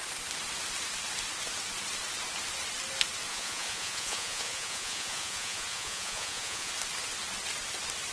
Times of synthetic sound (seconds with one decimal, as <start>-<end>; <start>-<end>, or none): 3.3-6.7